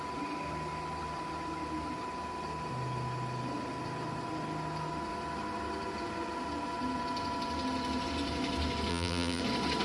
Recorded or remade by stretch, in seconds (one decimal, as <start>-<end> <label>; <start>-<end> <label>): 0.0-8.9 recorded; 8.9-9.4 remade; 9.4-9.8 recorded